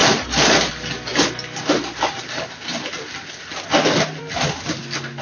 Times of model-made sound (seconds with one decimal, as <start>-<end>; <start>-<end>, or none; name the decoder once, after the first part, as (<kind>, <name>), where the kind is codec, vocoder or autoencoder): 0.0-0.7 (vocoder, BigVGAN v2)